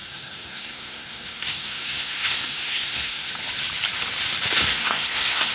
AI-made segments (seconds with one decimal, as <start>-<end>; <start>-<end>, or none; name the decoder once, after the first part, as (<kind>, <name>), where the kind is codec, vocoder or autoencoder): 0.0-3.3 (codec, SNAC); 4.7-5.5